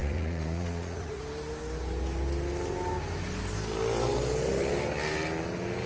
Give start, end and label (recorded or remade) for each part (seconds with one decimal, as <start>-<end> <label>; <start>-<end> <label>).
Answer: 0.0-1.2 remade; 1.2-5.9 recorded